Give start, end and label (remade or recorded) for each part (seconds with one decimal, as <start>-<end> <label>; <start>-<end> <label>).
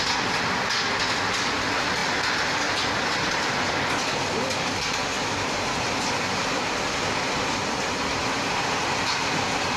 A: 0.0-9.8 recorded